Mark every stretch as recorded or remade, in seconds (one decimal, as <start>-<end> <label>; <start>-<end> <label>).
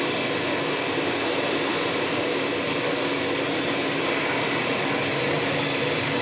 0.0-6.2 recorded